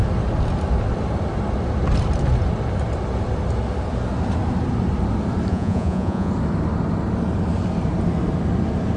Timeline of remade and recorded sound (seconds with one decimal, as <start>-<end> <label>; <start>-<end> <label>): 0.0-5.5 recorded; 5.5-6.3 remade; 6.3-9.0 recorded